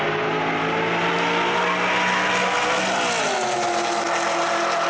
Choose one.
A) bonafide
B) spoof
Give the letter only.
A